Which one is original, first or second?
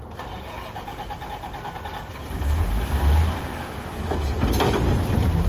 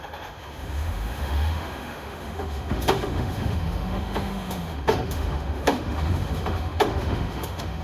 first